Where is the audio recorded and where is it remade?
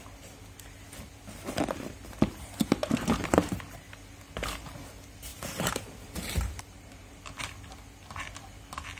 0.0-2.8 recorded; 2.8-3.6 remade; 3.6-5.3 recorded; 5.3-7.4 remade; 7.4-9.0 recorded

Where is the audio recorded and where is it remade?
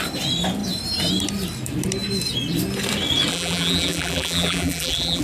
0.0-3.3 recorded; 3.3-5.2 remade